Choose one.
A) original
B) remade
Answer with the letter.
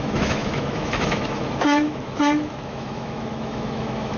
B